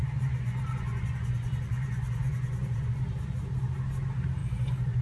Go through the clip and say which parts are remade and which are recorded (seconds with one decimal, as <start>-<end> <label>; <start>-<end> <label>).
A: 0.0-3.0 remade; 3.0-4.4 recorded; 4.4-5.0 remade